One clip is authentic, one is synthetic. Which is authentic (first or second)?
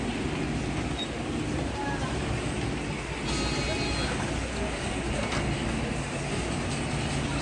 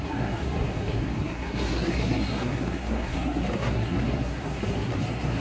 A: first